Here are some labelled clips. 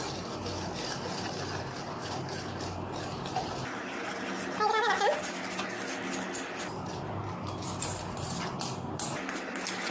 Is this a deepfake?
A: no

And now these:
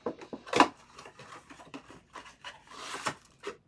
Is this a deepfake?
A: no